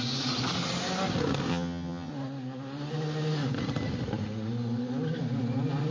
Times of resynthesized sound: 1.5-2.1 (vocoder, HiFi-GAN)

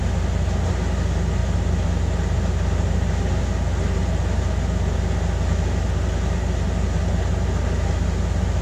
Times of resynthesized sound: none

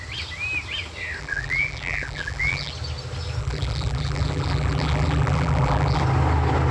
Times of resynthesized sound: 1.2-2.7 (vocoder, BigVGAN v2); 3.4-6.0

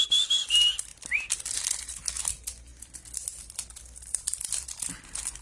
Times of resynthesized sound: none

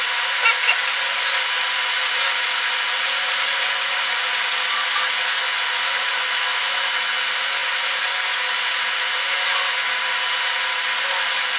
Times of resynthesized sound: none

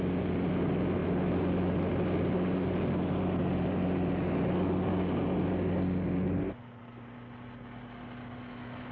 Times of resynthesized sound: none